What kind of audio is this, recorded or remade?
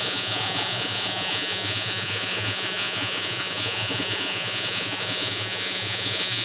remade